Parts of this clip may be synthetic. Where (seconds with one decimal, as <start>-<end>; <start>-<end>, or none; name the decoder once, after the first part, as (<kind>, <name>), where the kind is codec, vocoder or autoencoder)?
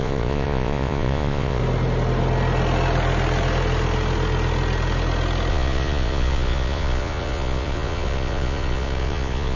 0.0-1.6 (vocoder, Vocos); 5.5-9.6